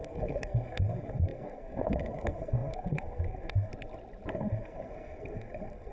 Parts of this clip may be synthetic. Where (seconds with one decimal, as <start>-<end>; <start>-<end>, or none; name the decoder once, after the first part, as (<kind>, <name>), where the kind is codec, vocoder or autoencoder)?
0.0-3.7 (codec, SNAC); 4.3-5.9